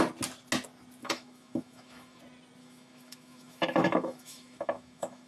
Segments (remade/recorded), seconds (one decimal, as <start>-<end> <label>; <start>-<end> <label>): 0.0-1.0 recorded; 1.0-2.2 remade; 2.2-2.6 recorded; 2.6-5.3 remade